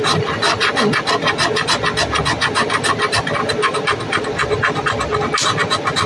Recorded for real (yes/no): yes